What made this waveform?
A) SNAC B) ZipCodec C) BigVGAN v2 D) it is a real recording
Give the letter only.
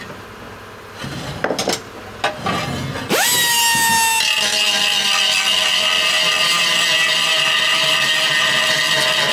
D